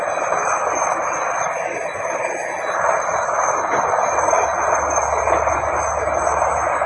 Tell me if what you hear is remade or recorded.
recorded